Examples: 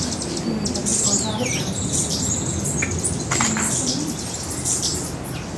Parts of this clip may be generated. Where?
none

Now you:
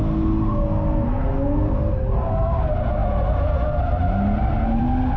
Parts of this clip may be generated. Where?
none

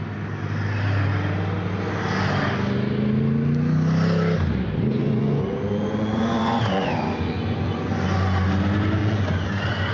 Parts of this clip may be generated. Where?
4.9-7.9; 9.0-9.9